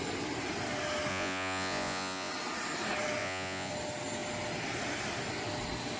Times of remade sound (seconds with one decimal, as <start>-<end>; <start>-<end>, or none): 1.1-2.3; 3.2-3.7

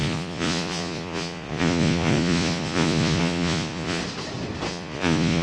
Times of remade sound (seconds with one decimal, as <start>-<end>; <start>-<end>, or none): 0.0-4.0; 4.7-5.4

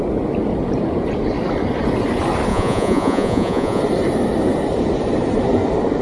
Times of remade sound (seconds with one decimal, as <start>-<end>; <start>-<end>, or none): 2.5-3.8

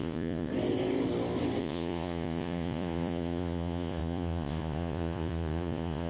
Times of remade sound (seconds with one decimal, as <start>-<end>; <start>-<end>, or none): 0.0-0.5; 1.6-6.1

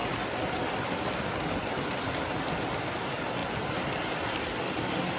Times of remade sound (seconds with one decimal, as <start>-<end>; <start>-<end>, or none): none

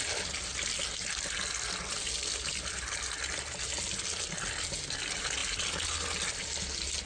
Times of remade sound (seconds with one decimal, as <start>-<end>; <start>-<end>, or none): none

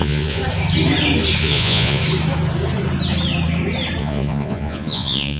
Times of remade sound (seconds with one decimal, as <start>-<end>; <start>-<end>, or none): 0.0-0.4; 1.4-2.0; 4.0-5.4